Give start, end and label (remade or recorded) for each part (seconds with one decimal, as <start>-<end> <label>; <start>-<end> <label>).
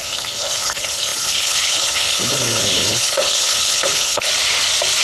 0.0-4.3 remade; 4.3-5.0 recorded